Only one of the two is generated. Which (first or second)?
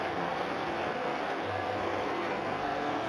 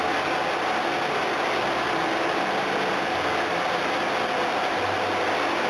first